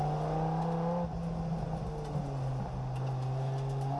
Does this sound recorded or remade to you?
recorded